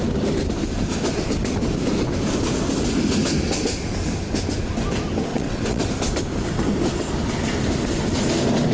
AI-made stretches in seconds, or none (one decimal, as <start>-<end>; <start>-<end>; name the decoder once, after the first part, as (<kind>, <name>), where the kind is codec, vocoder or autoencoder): 5.3-5.9 (vocoder, WaveNeXt)